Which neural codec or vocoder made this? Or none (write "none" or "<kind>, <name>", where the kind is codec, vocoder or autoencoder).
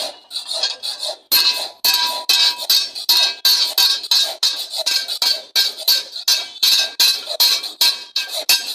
none